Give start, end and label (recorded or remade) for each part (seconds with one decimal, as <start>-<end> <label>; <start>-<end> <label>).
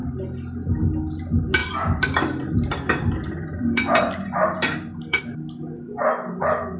0.0-1.6 recorded; 1.6-5.2 remade; 5.2-6.8 recorded